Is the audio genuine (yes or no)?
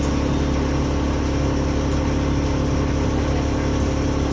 yes